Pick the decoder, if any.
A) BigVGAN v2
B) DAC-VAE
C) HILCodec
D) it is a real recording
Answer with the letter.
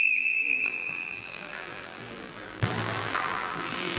A